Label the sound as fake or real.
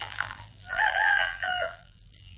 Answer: fake